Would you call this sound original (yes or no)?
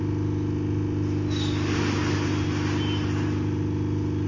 yes